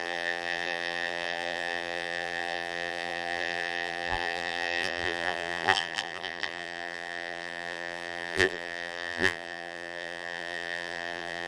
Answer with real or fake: fake